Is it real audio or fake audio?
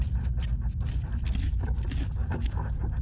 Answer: real